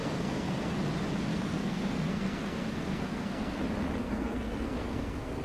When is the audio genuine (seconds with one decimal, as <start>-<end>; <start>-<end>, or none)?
0.8-1.3; 3.6-4.0